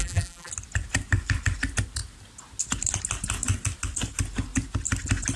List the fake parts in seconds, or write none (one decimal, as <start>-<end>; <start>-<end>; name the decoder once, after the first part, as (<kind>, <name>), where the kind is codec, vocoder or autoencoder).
0.0-0.5 (vocoder, BigVGAN v2)